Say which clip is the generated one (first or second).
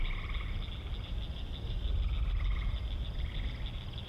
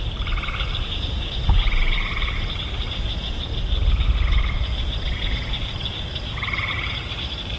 second